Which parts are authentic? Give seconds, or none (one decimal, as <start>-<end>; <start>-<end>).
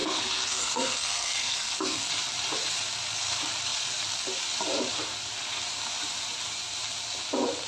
2.1-7.7